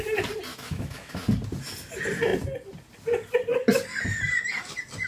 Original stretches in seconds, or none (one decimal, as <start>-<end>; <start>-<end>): 0.0-0.5; 1.2-5.1